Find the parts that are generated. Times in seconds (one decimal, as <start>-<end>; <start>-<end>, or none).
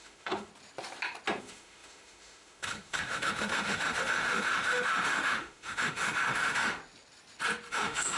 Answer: 0.0-0.5; 1.4-6.8; 7.7-8.2